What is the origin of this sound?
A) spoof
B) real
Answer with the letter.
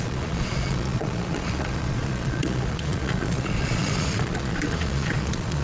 A